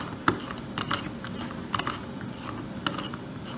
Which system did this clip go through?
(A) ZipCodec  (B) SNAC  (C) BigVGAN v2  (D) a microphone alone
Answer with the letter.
D